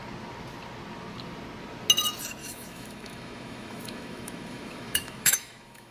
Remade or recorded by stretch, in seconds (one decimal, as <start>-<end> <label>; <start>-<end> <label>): 0.0-2.4 recorded; 2.4-5.9 remade